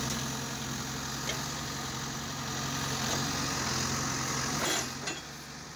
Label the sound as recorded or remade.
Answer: recorded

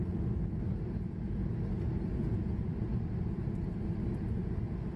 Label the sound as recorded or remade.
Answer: recorded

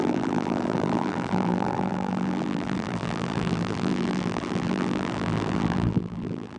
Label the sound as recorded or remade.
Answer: remade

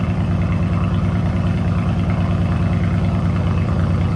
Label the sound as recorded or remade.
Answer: remade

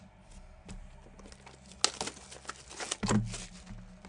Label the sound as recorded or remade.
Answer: recorded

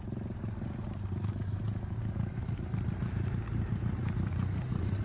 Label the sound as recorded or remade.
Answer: remade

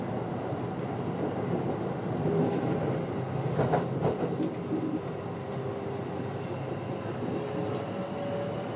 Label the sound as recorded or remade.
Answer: recorded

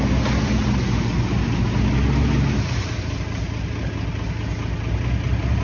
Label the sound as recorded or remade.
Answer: recorded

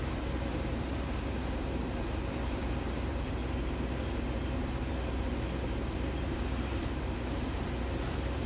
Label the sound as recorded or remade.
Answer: remade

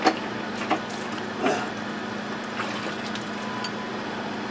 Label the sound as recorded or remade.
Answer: recorded